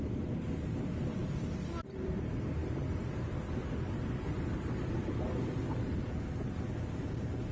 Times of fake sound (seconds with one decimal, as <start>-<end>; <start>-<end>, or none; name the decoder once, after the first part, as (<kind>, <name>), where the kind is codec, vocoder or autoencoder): 1.2-2.1 (vocoder, BigVGAN v2); 2.6-6.1

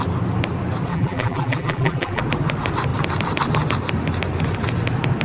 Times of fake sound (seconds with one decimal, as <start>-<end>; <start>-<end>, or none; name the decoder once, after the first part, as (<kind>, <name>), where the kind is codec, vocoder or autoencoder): 0.9-2.2 (vocoder, BigVGAN v2)

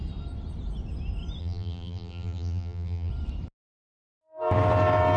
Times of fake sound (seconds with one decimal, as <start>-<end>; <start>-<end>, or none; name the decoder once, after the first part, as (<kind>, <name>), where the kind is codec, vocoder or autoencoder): 1.4-3.1 (vocoder, BigVGAN v2)

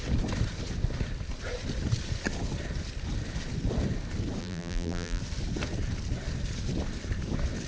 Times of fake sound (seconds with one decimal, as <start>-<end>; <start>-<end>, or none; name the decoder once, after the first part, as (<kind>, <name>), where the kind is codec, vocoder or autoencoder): 4.4-5.2 (vocoder, BigVGAN v2)

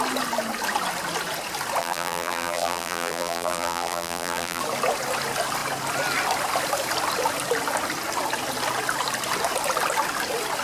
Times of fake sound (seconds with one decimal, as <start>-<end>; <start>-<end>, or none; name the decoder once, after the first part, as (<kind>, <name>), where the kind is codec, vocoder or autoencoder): 1.8-4.6 (vocoder, BigVGAN v2)

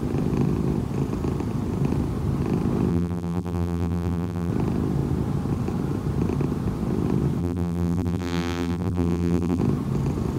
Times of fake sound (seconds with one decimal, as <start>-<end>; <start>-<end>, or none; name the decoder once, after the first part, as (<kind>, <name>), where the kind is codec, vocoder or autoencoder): 2.9-4.5 (vocoder, BigVGAN v2); 7.4-9.6

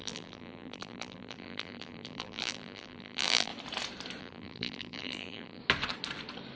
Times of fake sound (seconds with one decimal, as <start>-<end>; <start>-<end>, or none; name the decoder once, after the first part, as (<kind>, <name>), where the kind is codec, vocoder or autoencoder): 0.0-3.5 (vocoder, BigVGAN v2); 4.2-5.6

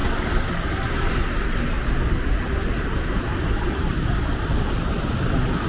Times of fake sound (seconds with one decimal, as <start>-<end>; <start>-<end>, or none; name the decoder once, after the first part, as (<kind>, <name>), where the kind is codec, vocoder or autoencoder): 3.4-5.7 (vocoder, BigVGAN v2)